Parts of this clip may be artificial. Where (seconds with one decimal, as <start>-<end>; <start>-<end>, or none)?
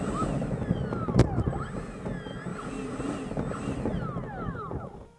none